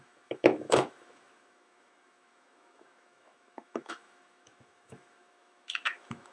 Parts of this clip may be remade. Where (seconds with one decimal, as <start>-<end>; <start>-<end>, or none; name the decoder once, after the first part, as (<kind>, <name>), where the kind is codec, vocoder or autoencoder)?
0.0-6.3 (autoencoder, DAC-VAE)